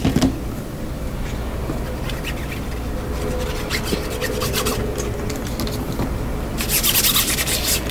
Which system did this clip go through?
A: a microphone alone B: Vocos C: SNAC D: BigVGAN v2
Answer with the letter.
A